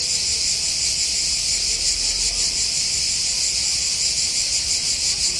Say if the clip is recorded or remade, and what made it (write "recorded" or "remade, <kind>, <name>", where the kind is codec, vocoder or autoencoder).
recorded